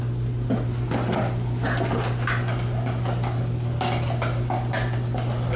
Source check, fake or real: real